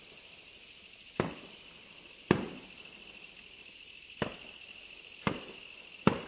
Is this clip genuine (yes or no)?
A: yes